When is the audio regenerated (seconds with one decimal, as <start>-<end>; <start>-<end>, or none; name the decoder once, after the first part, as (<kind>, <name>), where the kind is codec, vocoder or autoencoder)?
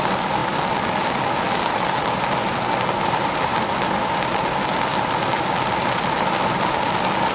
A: none